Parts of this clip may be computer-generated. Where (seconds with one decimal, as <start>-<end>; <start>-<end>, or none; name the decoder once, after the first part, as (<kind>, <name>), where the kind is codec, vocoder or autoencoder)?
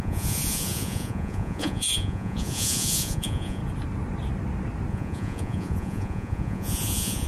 0.0-3.6 (vocoder, Vocos); 4.9-7.3